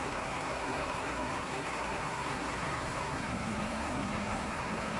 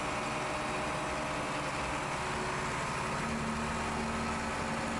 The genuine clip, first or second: second